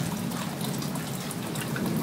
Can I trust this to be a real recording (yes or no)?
yes